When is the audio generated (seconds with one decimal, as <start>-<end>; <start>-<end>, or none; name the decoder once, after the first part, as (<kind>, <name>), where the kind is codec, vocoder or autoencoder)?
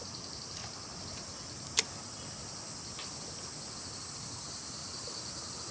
0.0-0.6 (vocoder, BigVGAN v2); 4.0-4.8